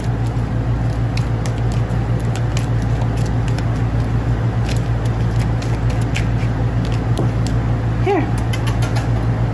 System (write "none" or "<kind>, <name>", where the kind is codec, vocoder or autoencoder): none